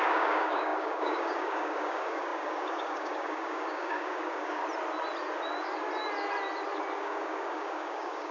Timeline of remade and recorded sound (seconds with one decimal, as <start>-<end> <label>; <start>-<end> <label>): 0.0-4.6 remade; 4.6-7.0 recorded; 7.0-8.3 remade